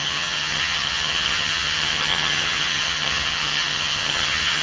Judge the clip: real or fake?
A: fake